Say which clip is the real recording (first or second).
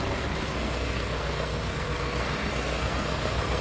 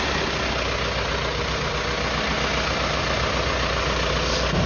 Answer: second